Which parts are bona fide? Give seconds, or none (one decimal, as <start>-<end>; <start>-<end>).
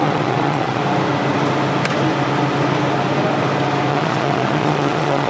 0.8-3.9